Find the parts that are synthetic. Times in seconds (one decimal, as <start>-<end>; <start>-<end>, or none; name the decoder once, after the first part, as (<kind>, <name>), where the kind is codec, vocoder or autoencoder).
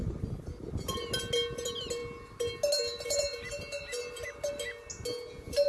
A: none